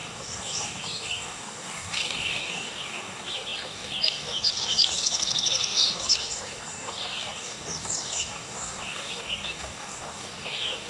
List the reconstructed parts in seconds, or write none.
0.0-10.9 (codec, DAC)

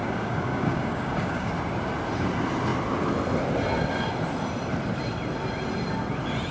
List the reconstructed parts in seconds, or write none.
0.0-1.5 (codec, DAC)

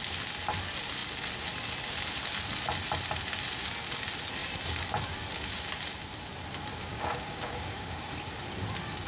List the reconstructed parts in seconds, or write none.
6.7-8.0 (codec, DAC)

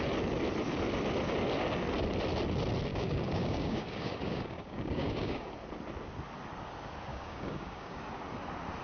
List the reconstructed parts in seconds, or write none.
2.9-5.5 (codec, DAC); 7.1-8.0

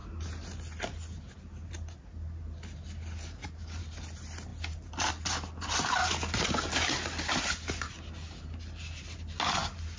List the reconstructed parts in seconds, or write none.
none

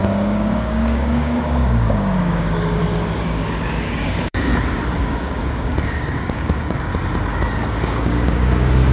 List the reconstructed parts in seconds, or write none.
0.0-4.5 (codec, DAC); 5.0-6.9; 7.7-8.9